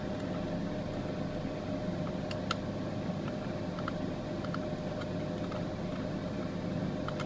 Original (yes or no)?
yes